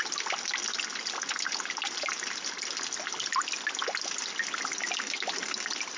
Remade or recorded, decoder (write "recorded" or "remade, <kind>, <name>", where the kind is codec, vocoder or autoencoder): recorded